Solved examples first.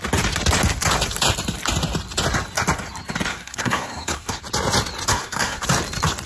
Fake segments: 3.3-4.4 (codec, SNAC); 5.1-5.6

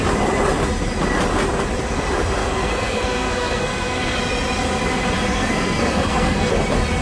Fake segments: 2.4-4.2 (codec, SNAC); 5.3-6.5

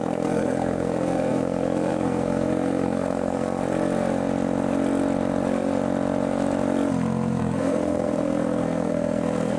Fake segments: 0.0-3.6 (codec, SNAC); 7.4-9.6

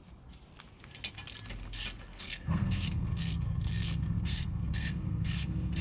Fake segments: 2.1-5.8 (codec, SNAC)

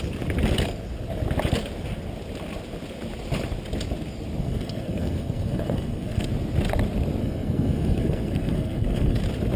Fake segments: 4.4-6.3 (codec, SNAC); 7.2-9.2